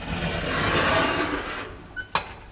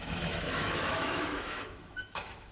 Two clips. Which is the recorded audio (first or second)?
first